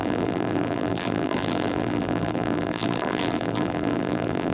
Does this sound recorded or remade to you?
remade